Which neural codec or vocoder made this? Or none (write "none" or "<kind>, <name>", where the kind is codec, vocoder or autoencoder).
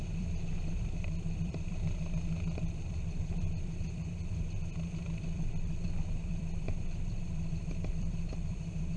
vocoder, BigVGAN v2